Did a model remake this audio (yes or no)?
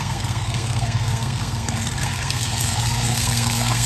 yes